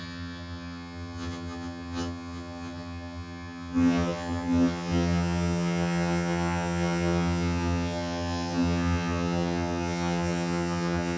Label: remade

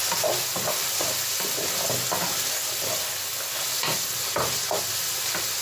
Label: recorded